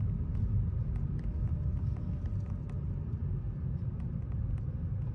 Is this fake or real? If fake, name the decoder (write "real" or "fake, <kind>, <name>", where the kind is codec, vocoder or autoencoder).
real